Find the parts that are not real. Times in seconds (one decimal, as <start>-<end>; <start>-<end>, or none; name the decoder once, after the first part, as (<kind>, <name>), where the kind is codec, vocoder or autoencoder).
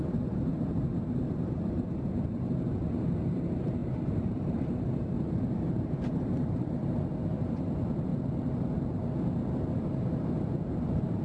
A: 0.0-8.1 (vocoder, BigVGAN v2); 9.8-11.2